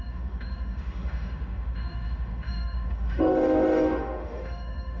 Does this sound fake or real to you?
fake